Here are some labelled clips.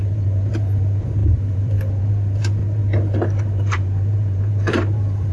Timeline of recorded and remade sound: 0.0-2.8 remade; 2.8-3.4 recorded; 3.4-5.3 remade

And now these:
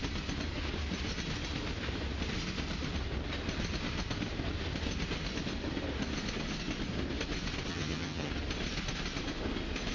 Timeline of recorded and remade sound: 0.0-7.7 recorded; 7.7-8.3 remade; 8.3-9.9 recorded

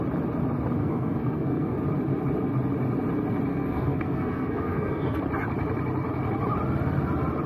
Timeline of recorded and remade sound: 0.0-0.8 recorded; 0.8-1.8 remade; 1.8-3.5 recorded; 3.5-5.2 remade; 5.2-7.5 recorded